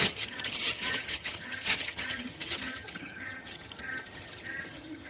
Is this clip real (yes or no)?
no